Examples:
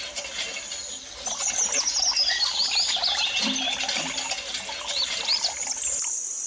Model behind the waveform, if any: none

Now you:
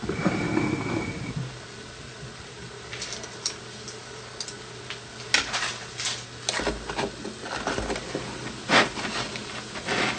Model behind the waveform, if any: none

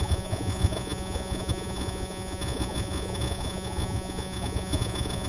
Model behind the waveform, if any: vocoder, Vocos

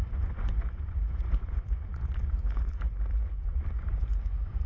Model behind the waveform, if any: vocoder, Vocos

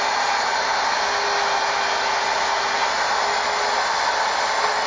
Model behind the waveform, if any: none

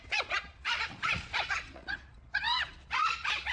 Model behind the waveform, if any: vocoder, Vocos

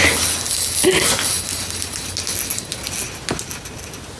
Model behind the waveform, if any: none